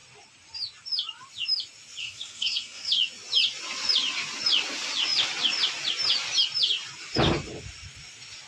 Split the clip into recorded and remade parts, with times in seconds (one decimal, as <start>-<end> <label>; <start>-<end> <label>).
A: 0.0-2.0 recorded; 2.0-2.9 remade; 2.9-8.5 recorded